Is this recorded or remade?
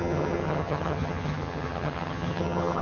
remade